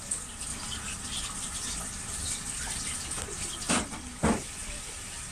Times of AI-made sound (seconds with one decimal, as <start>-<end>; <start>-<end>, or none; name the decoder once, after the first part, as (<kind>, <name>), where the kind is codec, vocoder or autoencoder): 0.0-0.5 (vocoder, BigVGAN v2); 3.7-5.3

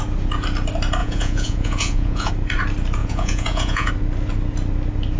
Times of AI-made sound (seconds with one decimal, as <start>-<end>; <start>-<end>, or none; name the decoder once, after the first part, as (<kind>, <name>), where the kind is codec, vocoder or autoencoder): 1.0-2.3 (vocoder, Vocos); 3.0-3.9

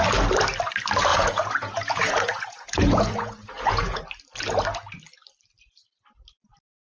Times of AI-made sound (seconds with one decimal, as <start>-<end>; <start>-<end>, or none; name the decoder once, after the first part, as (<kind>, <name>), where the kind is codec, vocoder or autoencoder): 1.1-4.0 (vocoder, Vocos)

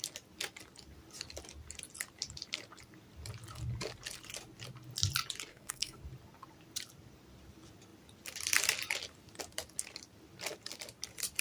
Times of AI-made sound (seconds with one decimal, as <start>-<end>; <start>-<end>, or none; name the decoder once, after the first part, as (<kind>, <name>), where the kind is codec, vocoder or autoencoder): 5.5-6.0 (codec, SNAC)

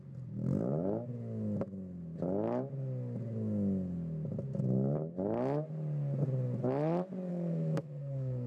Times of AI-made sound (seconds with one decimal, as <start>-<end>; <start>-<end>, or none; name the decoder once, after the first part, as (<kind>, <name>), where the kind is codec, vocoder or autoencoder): 7.3-8.5 (codec, SNAC)